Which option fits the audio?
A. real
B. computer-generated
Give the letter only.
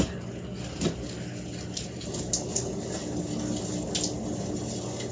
A